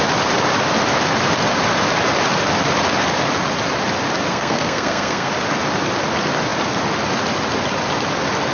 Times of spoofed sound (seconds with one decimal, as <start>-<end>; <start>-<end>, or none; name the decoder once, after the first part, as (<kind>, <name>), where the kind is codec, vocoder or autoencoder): 4.3-5.3 (codec, SNAC)